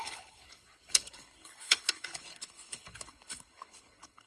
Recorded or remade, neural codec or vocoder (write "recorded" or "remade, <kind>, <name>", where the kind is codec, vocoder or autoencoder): remade, codec, HILCodec